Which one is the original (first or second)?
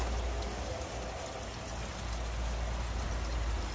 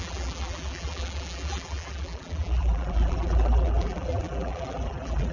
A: first